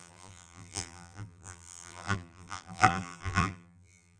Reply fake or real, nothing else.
fake